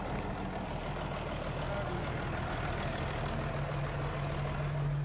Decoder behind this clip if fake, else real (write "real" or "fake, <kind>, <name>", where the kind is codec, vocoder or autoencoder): real